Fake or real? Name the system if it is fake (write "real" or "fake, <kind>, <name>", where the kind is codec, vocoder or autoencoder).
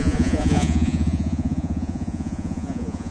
fake, vocoder, Vocos